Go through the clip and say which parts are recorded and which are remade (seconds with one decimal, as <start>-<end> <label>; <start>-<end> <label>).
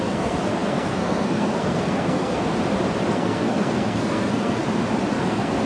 0.0-2.5 remade; 2.5-3.1 recorded; 3.1-4.6 remade; 4.6-5.2 recorded; 5.2-5.7 remade